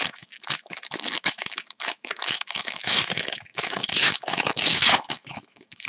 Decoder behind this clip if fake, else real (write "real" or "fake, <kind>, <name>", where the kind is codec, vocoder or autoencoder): fake, autoencoder, DAC-VAE